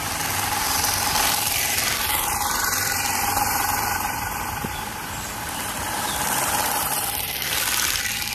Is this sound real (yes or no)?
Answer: no